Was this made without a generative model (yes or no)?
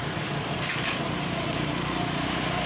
yes